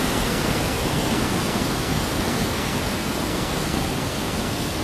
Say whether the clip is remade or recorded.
remade